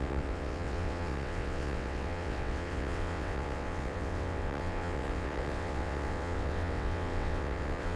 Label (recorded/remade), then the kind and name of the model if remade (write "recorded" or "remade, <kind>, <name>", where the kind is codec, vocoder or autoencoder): remade, vocoder, WaveNeXt